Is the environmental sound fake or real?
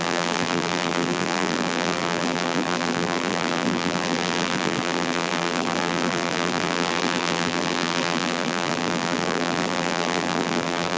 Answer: fake